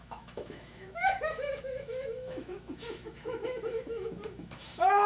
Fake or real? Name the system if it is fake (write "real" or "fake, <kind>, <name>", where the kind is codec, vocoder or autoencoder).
fake, autoencoder, DAC-VAE